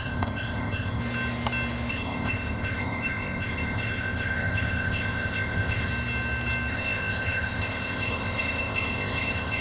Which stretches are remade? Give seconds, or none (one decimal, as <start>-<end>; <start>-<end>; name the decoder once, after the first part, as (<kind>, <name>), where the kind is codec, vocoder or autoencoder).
0.0-1.0 (codec, ZipCodec); 1.9-5.9; 6.7-9.6